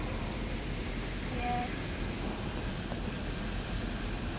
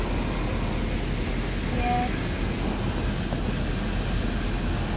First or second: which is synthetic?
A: first